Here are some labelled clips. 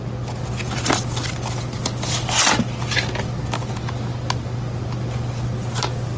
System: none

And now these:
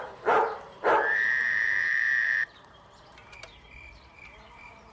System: vocoder, BigVGAN v2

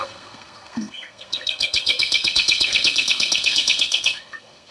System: codec, SNAC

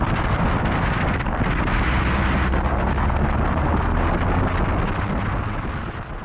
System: none